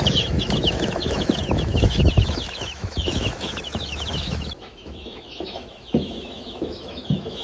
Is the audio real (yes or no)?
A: no